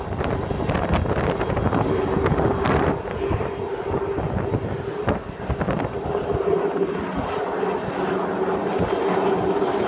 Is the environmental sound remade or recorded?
recorded